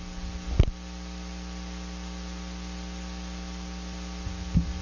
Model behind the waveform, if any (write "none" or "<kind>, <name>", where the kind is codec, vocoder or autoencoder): none